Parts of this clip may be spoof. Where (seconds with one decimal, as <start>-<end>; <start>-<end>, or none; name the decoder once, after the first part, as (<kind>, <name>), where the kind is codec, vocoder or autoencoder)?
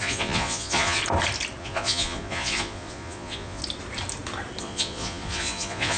0.0-1.0 (vocoder, Vocos); 1.6-3.6; 4.6-6.0